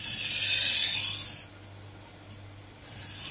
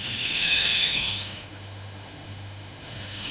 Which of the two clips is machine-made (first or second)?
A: second